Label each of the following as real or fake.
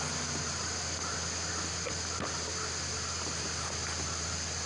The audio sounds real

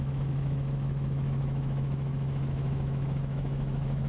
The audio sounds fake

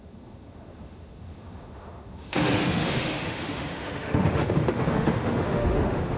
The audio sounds fake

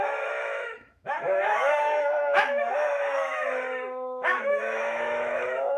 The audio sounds fake